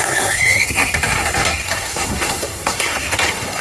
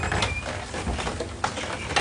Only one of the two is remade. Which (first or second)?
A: first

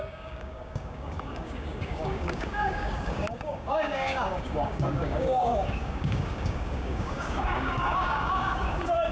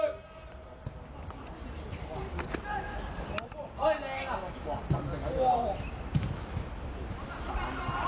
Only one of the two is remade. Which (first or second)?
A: first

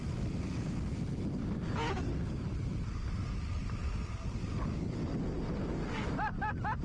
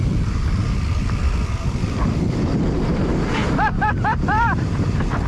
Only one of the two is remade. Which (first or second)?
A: second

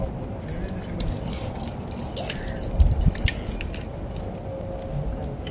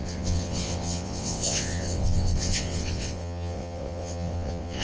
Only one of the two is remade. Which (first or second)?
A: second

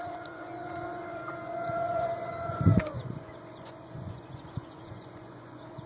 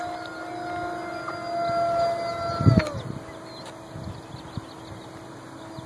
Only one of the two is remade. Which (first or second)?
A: first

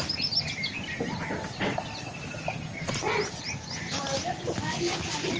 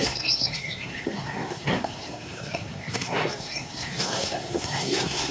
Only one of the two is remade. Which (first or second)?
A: second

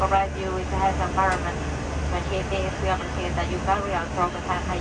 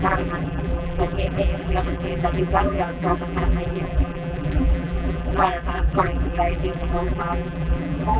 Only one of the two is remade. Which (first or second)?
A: second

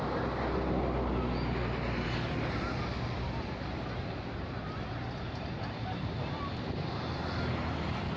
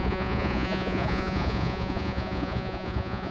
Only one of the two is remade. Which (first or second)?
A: second